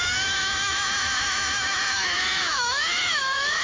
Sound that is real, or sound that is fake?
fake